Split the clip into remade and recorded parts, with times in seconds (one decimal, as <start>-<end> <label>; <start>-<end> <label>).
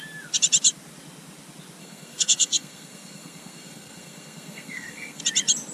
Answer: 0.0-1.8 recorded; 1.8-5.2 remade; 5.2-5.7 recorded